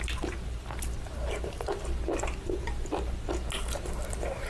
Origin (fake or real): real